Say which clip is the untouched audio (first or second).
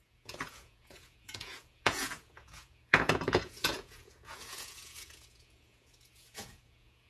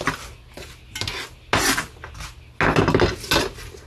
second